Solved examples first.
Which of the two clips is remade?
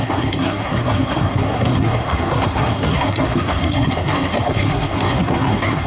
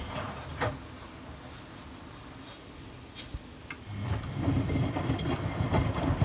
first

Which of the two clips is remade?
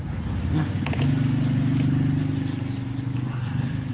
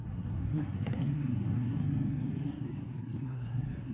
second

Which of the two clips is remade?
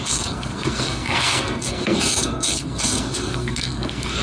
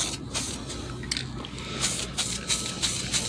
first